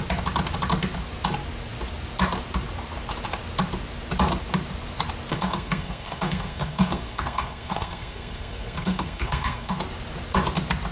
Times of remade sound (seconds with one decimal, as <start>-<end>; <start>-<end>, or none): 5.3-9.8